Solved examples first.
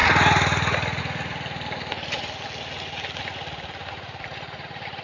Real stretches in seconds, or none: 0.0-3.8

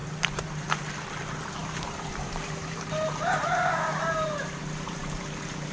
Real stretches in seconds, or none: 0.8-1.6; 5.0-5.7

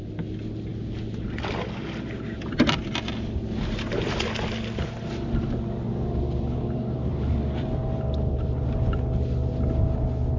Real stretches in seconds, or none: 0.0-10.4

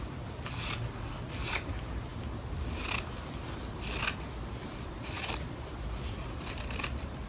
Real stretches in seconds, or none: 0.0-7.3

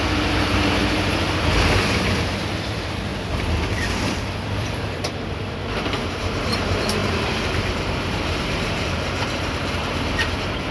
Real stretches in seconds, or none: 3.1-4.2

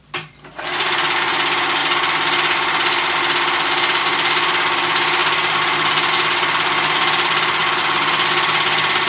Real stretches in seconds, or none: 0.0-9.1